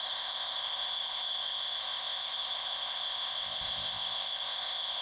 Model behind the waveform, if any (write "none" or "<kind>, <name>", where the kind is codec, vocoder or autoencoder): codec, ZipCodec